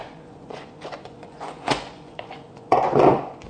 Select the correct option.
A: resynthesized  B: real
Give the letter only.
A